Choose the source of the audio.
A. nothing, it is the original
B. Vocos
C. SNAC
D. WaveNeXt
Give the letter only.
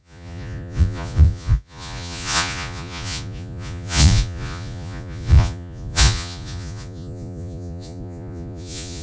B